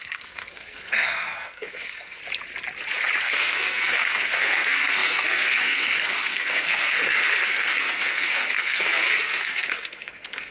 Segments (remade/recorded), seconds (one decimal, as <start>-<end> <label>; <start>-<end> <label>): 0.0-2.2 remade; 2.2-3.2 recorded; 3.2-10.5 remade

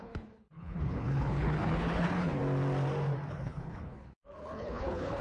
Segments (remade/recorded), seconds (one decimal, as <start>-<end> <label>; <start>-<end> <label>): 0.0-2.4 remade; 2.4-3.3 recorded; 3.3-5.2 remade

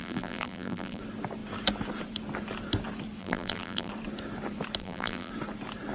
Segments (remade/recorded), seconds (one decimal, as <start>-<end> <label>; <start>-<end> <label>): 0.0-1.0 remade; 1.0-3.2 recorded; 3.2-3.9 remade; 3.9-4.8 recorded; 4.8-5.3 remade; 5.3-5.9 recorded

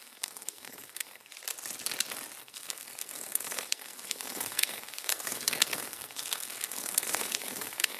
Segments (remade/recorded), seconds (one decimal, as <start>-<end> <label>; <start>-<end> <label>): 0.0-1.3 remade; 1.3-2.4 recorded; 2.4-8.0 remade